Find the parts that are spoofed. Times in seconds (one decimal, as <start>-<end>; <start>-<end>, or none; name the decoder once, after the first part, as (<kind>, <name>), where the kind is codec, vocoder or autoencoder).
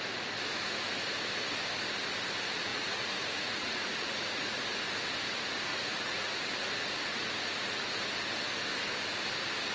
2.7-4.6 (vocoder, Vocos); 5.7-6.3; 7.1-8.0